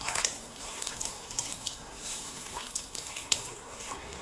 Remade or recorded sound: remade